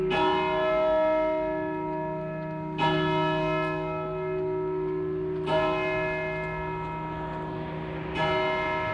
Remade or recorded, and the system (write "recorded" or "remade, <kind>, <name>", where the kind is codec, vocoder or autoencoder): recorded